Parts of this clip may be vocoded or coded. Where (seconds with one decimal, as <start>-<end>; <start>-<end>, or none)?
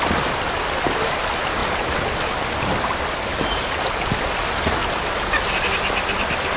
none